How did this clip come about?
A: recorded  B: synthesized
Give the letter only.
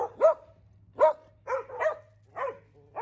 A